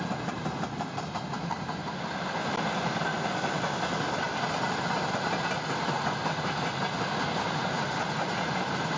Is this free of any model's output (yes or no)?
yes